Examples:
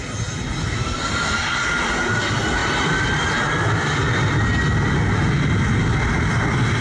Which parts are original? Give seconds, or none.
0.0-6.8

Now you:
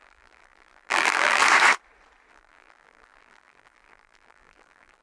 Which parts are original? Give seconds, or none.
1.4-2.3

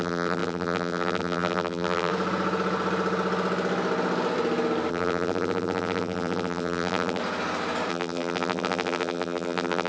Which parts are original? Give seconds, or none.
2.1-4.9; 7.2-7.9

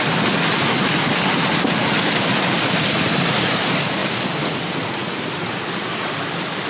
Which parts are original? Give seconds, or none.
0.0-4.0; 4.6-5.0; 5.5-6.7

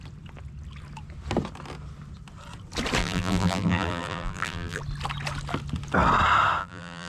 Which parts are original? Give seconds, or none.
0.0-3.0; 4.8-6.6

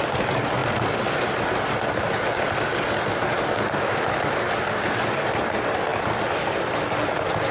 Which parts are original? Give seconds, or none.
0.0-7.5

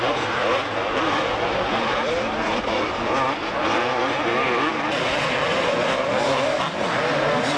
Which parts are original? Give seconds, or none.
0.0-0.4; 3.1-4.7; 6.6-7.6